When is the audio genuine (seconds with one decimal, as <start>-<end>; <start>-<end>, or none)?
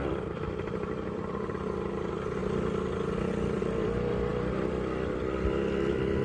2.4-3.6